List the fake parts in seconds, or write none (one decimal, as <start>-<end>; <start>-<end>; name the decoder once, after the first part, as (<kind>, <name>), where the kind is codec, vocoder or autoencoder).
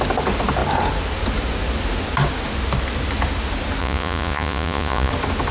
3.8-5.1 (vocoder, Vocos)